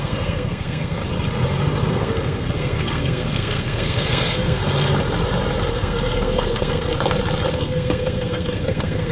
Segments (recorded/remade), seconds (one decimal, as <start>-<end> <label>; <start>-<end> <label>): 0.0-1.0 remade; 1.0-1.9 recorded; 1.9-4.6 remade; 4.6-5.7 recorded; 5.7-6.9 remade; 6.9-7.5 recorded; 7.5-9.1 remade